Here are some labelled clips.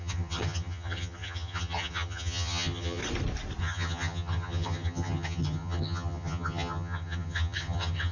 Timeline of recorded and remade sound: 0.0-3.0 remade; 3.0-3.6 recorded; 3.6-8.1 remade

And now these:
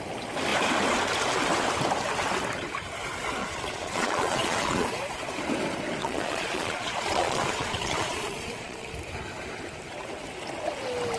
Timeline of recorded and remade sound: 0.0-3.4 recorded; 3.4-4.9 remade; 4.9-6.0 recorded; 6.0-8.9 remade; 8.9-11.2 recorded

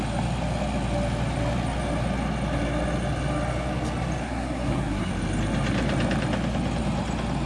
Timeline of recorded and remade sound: 0.0-4.2 recorded; 4.2-5.1 remade; 5.1-7.5 recorded

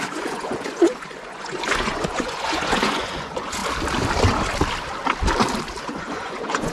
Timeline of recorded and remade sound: 0.0-3.6 remade; 3.6-5.8 recorded; 5.8-6.7 remade

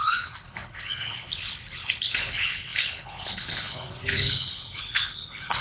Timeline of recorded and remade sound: 0.0-5.6 remade

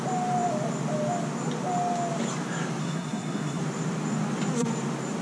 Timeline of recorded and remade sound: 0.0-2.8 recorded; 2.8-3.6 remade; 3.6-5.2 recorded